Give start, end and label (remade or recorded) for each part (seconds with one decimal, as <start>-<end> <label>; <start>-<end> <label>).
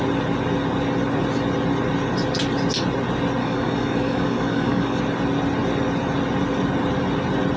0.0-3.4 recorded; 3.4-5.0 remade; 5.0-7.6 recorded